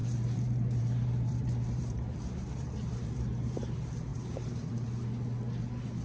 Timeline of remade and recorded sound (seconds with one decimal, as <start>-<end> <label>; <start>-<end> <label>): 0.0-3.6 remade; 3.6-4.1 recorded; 4.1-4.9 remade; 4.9-6.0 recorded

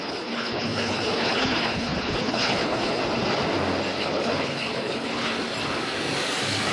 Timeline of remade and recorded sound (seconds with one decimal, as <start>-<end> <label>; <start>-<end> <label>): 0.0-3.0 remade; 3.0-4.0 recorded; 4.0-5.3 remade; 5.3-6.7 recorded

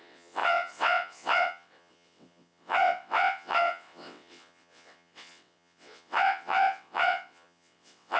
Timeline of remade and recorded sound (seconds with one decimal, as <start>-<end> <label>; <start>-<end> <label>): 0.0-8.2 remade

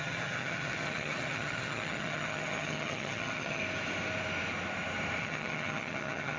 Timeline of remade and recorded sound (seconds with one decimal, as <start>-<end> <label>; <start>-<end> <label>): 0.0-3.6 remade; 3.6-5.2 recorded; 5.2-6.4 remade

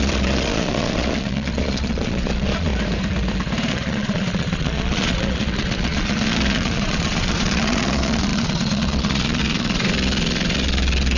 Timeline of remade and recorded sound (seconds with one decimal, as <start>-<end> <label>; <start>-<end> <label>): 0.0-2.7 remade; 2.7-3.7 recorded; 3.7-11.2 remade

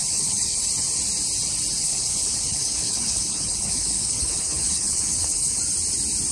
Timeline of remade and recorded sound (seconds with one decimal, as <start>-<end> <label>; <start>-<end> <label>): 0.0-0.7 remade; 0.7-1.8 recorded; 1.8-5.6 remade; 5.6-6.3 recorded

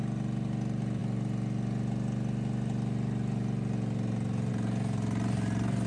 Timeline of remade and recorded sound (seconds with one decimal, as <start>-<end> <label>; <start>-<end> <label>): 0.0-5.9 recorded